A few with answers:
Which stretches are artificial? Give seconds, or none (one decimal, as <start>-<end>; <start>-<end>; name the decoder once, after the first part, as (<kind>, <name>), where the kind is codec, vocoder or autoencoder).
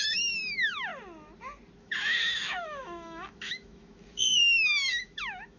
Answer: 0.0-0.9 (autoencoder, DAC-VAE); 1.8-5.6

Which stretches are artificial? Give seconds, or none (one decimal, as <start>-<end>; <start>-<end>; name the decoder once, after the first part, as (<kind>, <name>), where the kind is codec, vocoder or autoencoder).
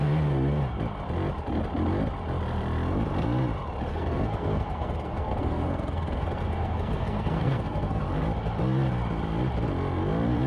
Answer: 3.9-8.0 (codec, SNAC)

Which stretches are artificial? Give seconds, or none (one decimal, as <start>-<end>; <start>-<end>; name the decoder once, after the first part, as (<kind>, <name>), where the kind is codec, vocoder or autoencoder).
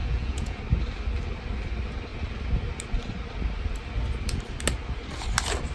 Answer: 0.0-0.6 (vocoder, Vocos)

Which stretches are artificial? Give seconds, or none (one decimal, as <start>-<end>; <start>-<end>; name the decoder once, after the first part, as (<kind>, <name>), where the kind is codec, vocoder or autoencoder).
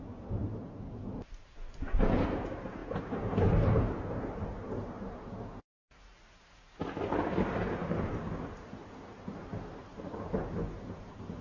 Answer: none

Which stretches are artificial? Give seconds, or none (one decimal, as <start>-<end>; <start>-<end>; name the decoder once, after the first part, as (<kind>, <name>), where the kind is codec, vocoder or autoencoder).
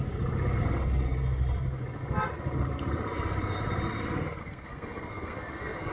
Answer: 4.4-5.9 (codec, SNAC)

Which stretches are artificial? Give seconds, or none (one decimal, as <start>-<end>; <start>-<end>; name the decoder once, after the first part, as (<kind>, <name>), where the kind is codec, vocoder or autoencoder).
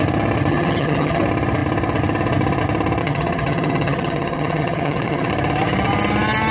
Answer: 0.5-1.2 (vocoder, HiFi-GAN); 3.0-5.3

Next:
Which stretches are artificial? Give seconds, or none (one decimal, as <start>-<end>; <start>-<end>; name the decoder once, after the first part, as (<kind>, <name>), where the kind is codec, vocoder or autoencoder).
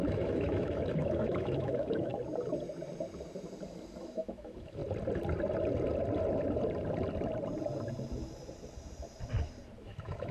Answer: 0.0-2.1 (autoencoder, DAC-VAE); 4.0-4.8; 9.8-10.3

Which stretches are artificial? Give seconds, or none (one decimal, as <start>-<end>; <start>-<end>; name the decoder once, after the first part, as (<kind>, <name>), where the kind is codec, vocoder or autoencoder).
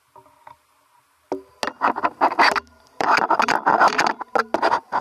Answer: 2.7-4.1 (vocoder, BigVGAN v2)